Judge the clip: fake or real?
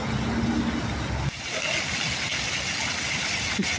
real